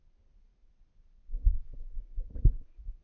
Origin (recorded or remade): recorded